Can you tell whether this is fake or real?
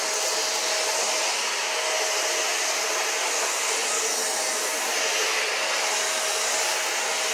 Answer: real